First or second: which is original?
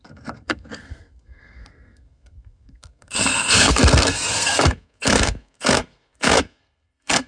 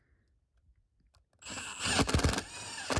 second